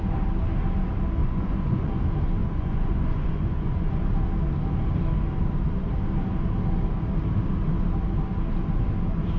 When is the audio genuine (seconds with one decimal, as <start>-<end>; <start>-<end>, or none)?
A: 0.0-1.2; 2.0-2.4; 4.1-9.4